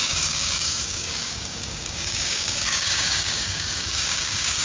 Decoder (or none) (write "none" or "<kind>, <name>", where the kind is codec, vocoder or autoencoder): codec, DAC